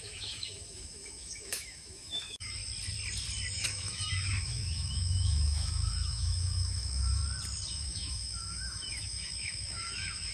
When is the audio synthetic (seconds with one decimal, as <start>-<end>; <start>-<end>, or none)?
0.0-2.6; 3.5-7.2; 7.7-10.3